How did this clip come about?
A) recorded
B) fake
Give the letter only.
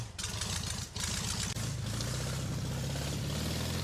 A